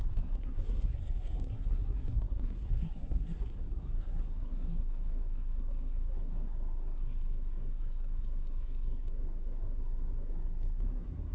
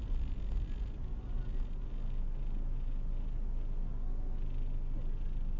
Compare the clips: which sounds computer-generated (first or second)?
first